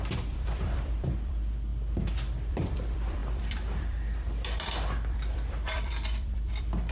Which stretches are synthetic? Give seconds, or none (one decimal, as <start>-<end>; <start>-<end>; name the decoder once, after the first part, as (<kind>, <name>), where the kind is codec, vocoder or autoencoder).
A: 0.0-1.7 (vocoder, BigVGAN v2); 2.5-6.9